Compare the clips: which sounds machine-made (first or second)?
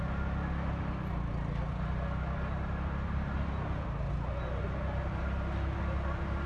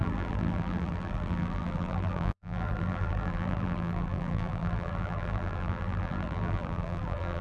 second